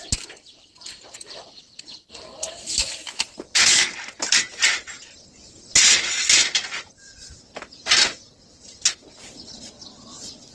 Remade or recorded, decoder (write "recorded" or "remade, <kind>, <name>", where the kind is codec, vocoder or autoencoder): recorded